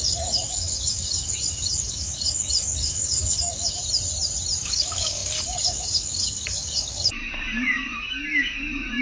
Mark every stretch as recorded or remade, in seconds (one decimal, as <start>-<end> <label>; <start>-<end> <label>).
0.0-3.8 remade; 3.8-4.6 recorded; 4.6-9.0 remade